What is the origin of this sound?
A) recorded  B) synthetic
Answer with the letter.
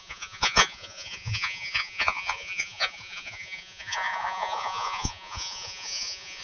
B